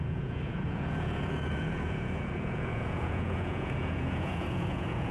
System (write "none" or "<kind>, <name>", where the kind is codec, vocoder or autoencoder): vocoder, Vocos